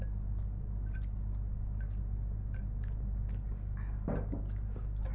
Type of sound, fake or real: real